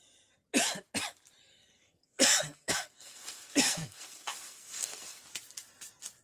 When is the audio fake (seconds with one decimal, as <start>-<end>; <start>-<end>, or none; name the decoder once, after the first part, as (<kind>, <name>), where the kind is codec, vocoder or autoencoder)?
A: 1.5-5.2 (codec, SNAC)